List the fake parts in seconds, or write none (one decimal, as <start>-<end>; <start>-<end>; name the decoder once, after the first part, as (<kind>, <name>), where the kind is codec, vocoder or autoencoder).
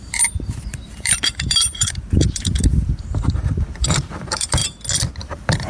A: 0.0-4.6 (vocoder, BigVGAN v2); 5.1-5.7